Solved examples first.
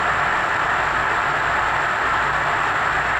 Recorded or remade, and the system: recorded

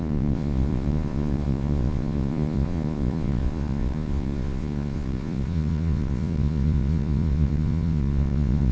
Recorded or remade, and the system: remade, vocoder, Vocos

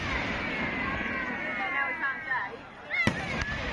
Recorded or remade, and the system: recorded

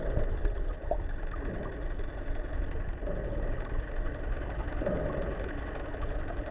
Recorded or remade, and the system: recorded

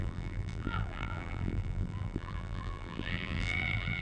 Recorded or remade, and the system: remade, vocoder, BigVGAN v2